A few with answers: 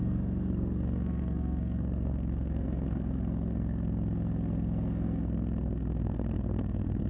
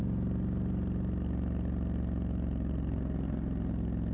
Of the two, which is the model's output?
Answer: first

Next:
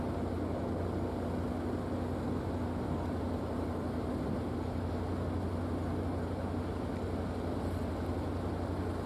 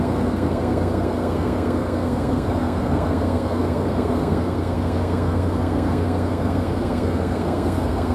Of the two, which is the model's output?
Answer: second